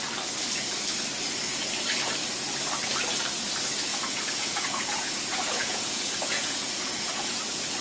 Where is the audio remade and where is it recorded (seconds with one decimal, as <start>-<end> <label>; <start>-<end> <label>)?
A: 0.0-3.9 recorded; 3.9-7.3 remade; 7.3-7.8 recorded